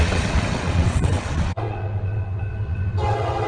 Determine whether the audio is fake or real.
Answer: fake